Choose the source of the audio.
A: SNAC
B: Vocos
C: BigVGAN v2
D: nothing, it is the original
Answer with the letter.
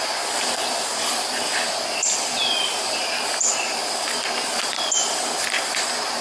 C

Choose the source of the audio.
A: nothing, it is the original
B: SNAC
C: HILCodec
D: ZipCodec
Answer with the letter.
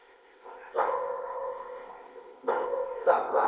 D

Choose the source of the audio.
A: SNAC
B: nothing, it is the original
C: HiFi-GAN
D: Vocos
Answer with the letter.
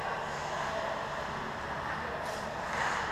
B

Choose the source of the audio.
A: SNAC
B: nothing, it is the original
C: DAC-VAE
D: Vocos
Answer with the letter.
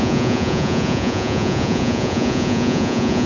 D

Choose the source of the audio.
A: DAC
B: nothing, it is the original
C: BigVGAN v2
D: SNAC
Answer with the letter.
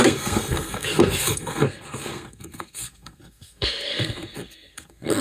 D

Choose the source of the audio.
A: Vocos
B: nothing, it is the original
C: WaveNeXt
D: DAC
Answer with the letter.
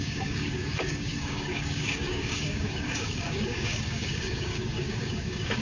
D